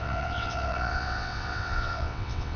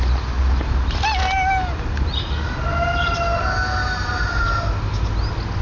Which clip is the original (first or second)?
second